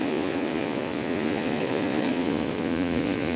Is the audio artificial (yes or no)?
yes